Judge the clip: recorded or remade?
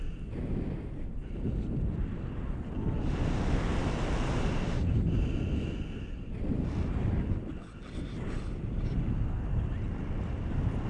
recorded